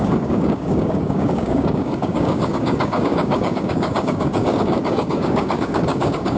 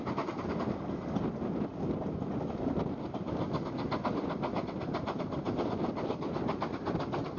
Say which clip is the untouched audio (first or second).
second